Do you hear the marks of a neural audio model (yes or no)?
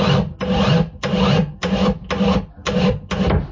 no